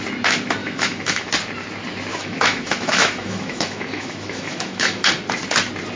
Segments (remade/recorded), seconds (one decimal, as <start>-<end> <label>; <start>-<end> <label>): 0.0-0.6 recorded; 0.6-1.3 remade; 1.3-2.1 recorded; 2.1-5.1 remade; 5.1-6.0 recorded